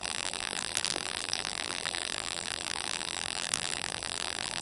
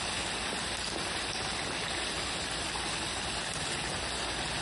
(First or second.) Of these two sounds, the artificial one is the first